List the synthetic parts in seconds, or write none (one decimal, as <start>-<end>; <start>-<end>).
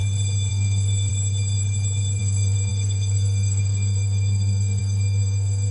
0.5-1.1; 2.2-5.7